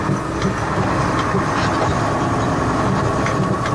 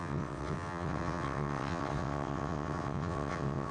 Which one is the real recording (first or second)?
first